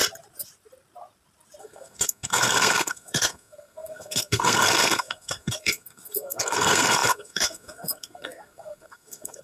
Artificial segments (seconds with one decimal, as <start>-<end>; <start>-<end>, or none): 1.6-9.4